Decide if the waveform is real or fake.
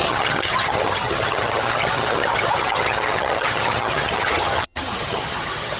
fake